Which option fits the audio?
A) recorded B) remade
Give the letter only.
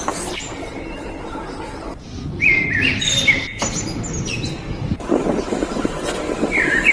A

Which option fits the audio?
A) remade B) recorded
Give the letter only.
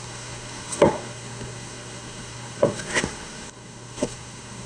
A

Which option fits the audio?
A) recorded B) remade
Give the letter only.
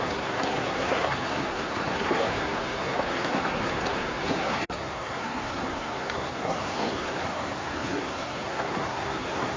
B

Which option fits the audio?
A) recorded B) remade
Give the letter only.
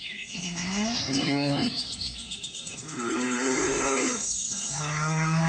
B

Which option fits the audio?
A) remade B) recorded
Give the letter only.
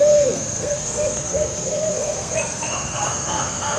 A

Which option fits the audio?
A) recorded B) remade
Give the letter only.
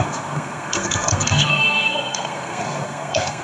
B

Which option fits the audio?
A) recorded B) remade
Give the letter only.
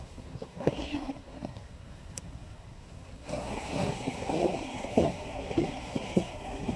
B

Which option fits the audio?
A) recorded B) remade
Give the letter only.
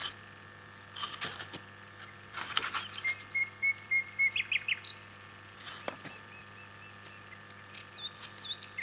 A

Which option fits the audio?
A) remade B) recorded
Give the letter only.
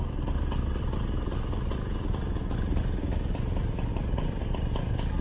B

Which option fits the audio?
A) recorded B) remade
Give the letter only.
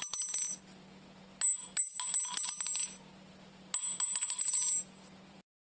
A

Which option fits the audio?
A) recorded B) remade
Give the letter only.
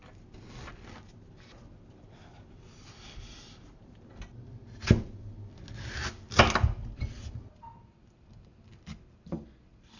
A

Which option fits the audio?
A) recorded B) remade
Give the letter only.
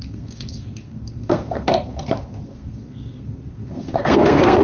B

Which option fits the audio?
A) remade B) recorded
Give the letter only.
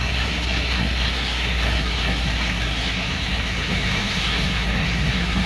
A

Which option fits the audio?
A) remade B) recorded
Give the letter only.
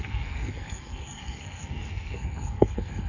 A